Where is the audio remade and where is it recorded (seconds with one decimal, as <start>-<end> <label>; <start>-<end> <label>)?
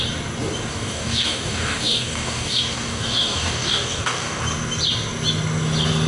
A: 0.0-0.7 recorded; 0.7-4.4 remade; 4.4-6.1 recorded